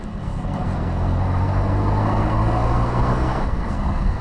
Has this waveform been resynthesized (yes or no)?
yes